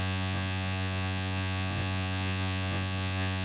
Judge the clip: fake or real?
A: fake